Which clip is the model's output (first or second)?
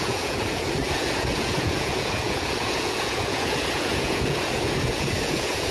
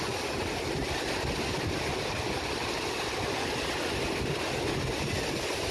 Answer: first